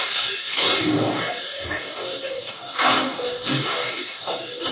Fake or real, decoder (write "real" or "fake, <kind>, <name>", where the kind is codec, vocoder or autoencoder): fake, codec, DAC